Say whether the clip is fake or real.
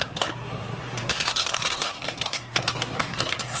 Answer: fake